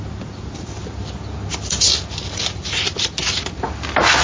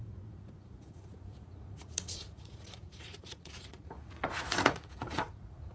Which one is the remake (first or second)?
second